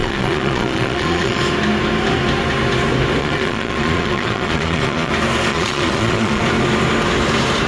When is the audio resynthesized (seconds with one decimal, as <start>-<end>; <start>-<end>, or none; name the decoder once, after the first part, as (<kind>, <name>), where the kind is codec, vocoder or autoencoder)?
0.0-1.4 (vocoder, Vocos); 3.2-5.1; 5.5-6.4